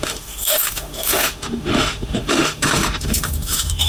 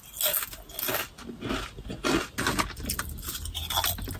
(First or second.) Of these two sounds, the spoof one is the first